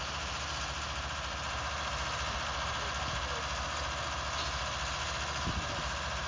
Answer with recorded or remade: recorded